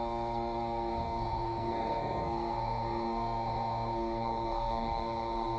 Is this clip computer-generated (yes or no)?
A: yes